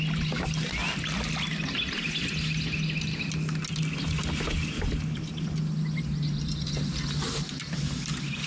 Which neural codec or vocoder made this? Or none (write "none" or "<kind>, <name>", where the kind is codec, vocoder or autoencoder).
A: none